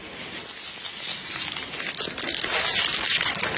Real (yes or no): yes